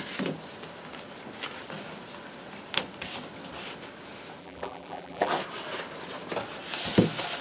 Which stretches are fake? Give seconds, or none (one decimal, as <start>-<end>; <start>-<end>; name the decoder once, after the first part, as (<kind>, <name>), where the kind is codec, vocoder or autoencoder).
4.4-5.3 (vocoder, BigVGAN v2)